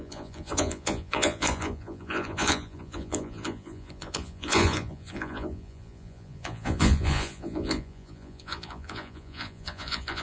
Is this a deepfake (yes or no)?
yes